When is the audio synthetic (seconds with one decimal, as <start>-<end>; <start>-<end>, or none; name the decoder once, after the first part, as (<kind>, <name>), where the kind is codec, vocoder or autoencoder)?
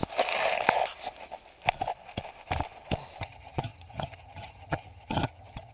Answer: 3.2-5.7 (vocoder, HiFi-GAN)